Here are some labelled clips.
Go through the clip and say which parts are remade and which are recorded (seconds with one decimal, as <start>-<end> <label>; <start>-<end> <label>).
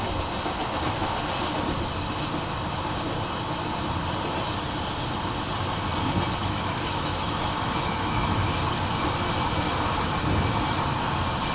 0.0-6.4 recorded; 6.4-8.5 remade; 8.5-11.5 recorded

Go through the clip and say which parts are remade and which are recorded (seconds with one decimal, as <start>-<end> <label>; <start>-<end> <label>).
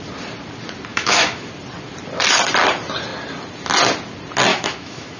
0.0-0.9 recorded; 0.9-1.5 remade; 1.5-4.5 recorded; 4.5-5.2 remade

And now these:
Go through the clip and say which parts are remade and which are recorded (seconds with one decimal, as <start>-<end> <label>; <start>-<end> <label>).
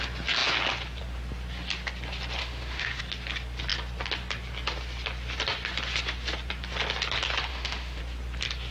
0.0-2.4 recorded; 2.4-3.0 remade; 3.0-7.5 recorded; 7.5-8.0 remade; 8.0-8.7 recorded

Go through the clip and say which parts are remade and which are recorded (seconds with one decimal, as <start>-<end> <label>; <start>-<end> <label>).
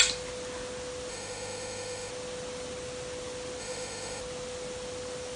0.0-1.1 recorded; 1.1-2.1 remade; 2.1-3.6 recorded; 3.6-4.2 remade; 4.2-5.4 recorded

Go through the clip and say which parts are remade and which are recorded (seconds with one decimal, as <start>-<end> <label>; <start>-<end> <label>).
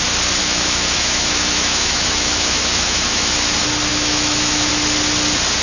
0.0-0.4 recorded; 0.4-3.5 remade; 3.5-3.9 recorded; 3.9-4.7 remade; 4.7-5.6 recorded